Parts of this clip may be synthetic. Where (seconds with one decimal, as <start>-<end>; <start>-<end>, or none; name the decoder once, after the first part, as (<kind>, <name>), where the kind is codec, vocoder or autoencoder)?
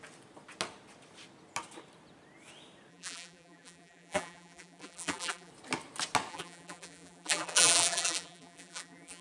2.9-5.5 (vocoder, BigVGAN v2); 6.3-9.2